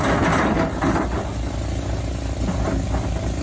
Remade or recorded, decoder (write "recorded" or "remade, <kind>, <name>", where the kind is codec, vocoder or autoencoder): recorded